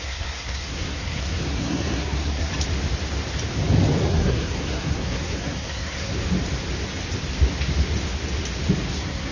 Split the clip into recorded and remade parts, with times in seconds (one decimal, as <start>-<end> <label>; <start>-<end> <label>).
0.0-2.5 remade; 2.5-4.0 recorded; 4.0-6.1 remade; 6.1-8.9 recorded; 8.9-9.3 remade